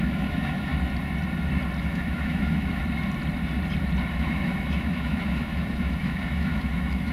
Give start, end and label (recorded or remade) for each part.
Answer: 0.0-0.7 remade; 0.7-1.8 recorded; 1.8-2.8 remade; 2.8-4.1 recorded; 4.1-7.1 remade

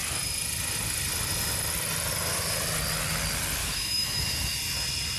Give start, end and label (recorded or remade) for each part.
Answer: 0.0-3.6 recorded; 3.6-4.2 remade; 4.2-5.2 recorded

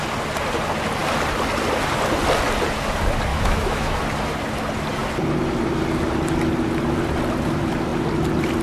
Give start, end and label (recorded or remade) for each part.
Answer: 0.0-3.3 recorded; 3.3-4.0 remade; 4.0-8.6 recorded